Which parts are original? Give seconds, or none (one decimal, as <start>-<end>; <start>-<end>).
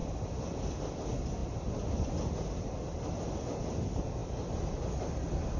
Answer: 0.0-5.6